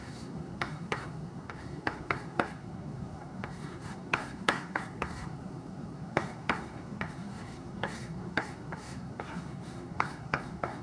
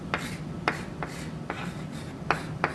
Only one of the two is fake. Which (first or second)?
first